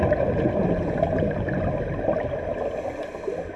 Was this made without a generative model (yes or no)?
yes